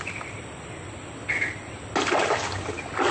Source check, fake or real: real